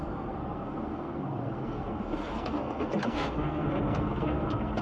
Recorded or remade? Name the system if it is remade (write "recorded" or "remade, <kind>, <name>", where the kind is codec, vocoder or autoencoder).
remade, codec, SNAC